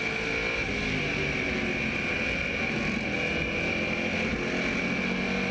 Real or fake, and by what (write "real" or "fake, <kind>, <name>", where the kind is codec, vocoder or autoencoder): real